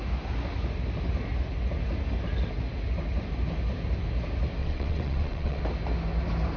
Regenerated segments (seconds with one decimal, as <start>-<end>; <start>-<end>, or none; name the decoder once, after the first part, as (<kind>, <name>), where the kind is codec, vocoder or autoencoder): 4.6-5.6 (vocoder, WaveNeXt)

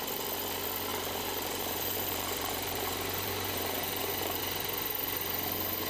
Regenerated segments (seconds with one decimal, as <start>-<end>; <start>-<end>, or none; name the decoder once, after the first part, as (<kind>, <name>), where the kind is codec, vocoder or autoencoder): 0.9-4.4 (vocoder, BigVGAN v2)